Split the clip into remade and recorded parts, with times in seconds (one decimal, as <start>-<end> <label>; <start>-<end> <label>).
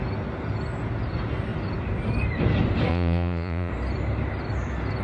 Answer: 0.0-2.9 recorded; 2.9-3.7 remade; 3.7-5.0 recorded